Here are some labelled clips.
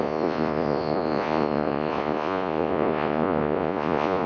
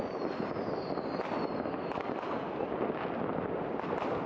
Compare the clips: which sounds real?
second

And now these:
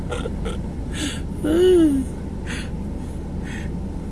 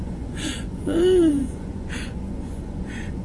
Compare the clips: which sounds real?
first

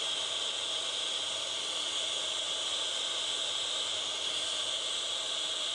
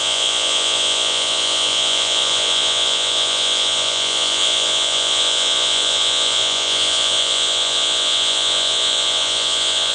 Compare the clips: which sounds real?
first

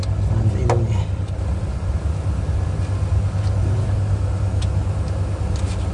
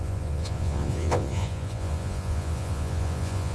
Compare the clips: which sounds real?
first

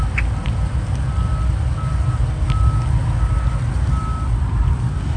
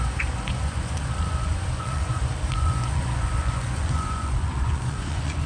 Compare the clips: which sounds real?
first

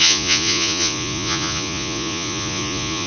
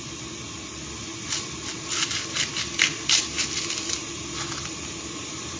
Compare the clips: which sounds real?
second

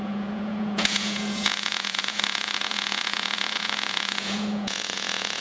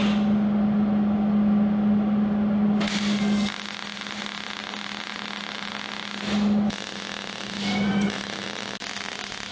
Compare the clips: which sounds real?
second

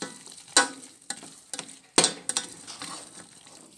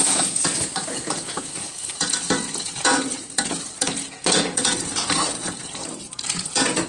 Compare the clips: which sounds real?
first